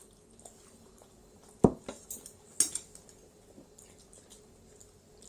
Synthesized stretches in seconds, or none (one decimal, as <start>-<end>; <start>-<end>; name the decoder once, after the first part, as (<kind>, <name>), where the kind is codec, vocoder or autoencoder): none